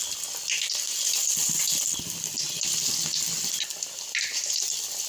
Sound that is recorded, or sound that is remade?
recorded